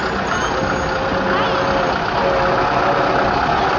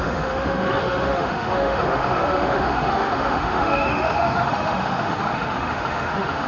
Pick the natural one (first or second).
first